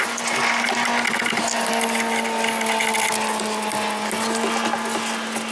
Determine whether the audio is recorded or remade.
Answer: recorded